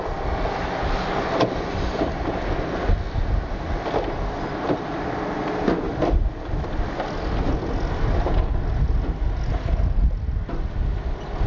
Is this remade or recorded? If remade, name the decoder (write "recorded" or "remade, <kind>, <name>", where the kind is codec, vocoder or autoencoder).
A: recorded